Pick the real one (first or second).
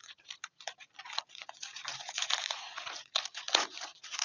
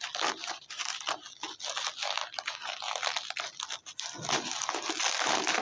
second